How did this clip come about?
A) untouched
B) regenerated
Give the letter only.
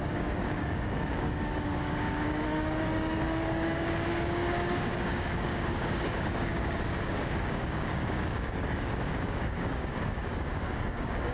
B